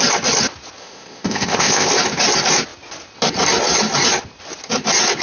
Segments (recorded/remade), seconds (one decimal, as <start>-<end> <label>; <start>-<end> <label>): 0.0-0.8 recorded; 0.8-1.9 remade; 1.9-5.2 recorded